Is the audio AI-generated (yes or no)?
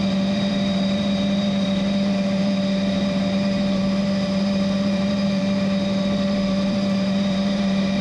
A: yes